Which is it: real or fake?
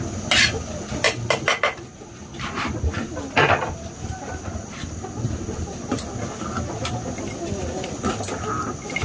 real